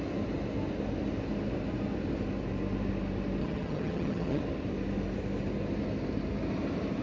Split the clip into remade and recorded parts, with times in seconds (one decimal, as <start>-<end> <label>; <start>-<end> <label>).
0.0-3.4 recorded; 3.4-4.4 remade; 4.4-7.0 recorded